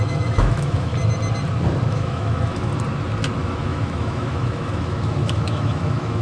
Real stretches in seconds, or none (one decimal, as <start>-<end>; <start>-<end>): 0.9-1.9; 2.7-3.4